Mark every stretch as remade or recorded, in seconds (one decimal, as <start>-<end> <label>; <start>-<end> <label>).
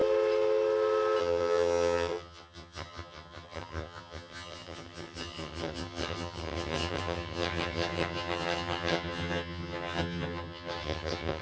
0.0-1.2 recorded; 1.2-11.4 remade